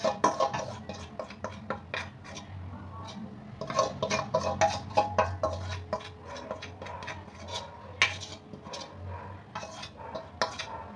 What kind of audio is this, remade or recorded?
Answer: recorded